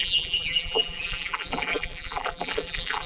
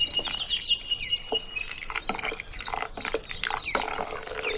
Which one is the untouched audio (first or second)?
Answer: second